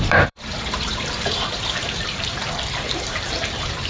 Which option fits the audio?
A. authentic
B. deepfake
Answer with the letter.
B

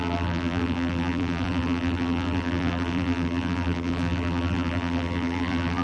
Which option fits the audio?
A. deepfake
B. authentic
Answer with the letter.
A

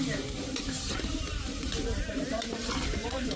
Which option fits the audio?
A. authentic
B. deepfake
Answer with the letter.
B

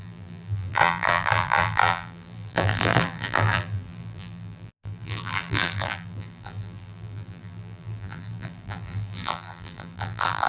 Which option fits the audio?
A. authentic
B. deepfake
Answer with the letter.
B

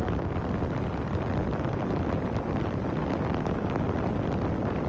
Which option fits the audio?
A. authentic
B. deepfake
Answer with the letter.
B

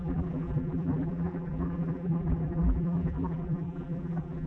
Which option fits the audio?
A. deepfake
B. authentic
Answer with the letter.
A